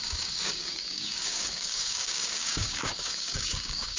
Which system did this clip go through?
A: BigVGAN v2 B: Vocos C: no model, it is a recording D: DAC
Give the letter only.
D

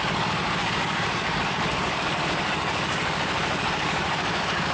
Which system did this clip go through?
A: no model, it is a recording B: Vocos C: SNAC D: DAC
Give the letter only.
D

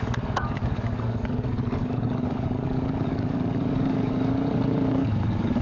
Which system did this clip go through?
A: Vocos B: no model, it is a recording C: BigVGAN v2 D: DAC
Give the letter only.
D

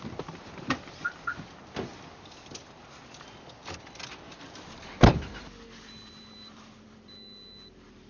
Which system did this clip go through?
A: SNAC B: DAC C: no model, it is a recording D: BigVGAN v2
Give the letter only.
C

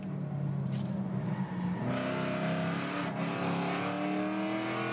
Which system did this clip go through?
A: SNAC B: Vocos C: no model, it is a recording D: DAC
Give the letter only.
C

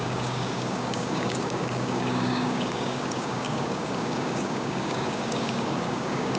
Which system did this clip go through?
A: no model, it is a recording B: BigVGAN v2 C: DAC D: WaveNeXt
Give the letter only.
C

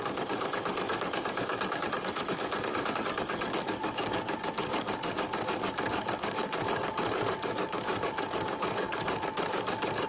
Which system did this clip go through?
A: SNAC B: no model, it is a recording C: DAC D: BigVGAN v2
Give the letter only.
C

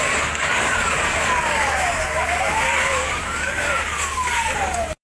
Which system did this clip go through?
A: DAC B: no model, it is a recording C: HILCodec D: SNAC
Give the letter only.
A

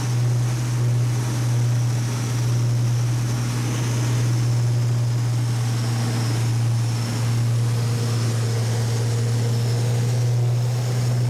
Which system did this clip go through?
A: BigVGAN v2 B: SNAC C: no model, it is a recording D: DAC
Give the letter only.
C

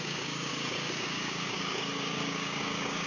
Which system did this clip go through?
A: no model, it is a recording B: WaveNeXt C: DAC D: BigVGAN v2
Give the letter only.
C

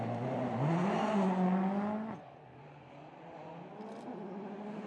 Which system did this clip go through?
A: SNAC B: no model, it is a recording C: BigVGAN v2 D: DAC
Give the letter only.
B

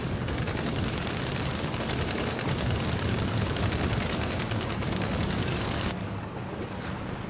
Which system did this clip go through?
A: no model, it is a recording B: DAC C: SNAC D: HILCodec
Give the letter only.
B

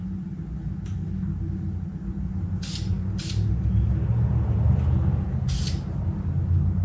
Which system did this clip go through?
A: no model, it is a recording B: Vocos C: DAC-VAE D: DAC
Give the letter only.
A